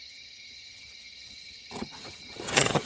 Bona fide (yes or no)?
no